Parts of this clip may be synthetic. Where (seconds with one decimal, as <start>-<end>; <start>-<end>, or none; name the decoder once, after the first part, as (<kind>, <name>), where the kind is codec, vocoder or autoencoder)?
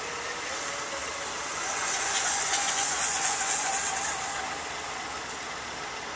1.5-3.7 (vocoder, Vocos)